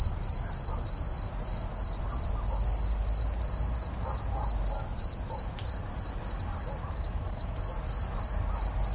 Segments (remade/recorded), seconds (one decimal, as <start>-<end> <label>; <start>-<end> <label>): 0.0-6.8 recorded; 6.8-7.6 remade; 7.6-8.9 recorded